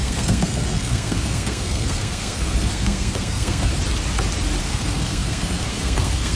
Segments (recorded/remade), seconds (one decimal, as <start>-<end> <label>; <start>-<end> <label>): 0.0-3.7 remade; 3.7-4.6 recorded; 4.6-6.4 remade

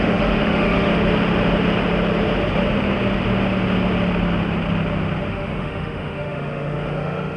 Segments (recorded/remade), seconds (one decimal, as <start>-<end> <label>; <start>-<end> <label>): 0.0-0.9 remade; 0.9-5.3 recorded; 5.3-7.4 remade

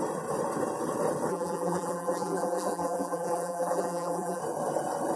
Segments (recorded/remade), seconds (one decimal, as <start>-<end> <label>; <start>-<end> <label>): 0.0-1.3 recorded; 1.3-4.4 remade; 4.4-5.2 recorded

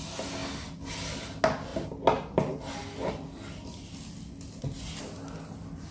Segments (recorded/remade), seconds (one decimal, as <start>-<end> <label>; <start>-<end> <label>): 0.0-5.9 recorded

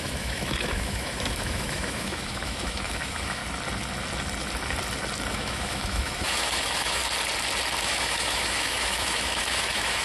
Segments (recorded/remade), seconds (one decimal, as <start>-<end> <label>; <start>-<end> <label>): 0.0-3.4 remade; 3.4-5.3 recorded; 5.3-7.0 remade; 7.0-7.8 recorded; 7.8-10.0 remade

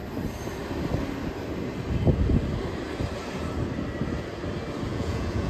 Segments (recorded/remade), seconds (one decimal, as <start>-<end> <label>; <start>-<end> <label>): 0.0-4.9 recorded; 4.9-5.5 remade

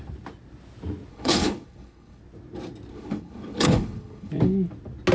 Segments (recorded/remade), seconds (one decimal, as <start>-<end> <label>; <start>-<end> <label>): 0.0-1.1 recorded; 1.1-2.2 remade; 2.2-2.9 recorded; 2.9-4.3 remade; 4.3-5.1 recorded